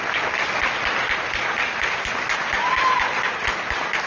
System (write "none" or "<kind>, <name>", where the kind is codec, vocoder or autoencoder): none